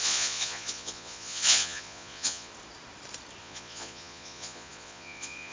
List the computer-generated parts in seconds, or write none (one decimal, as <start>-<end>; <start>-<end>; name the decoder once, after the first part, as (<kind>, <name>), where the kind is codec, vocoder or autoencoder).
0.0-2.5 (vocoder, Vocos); 3.4-5.5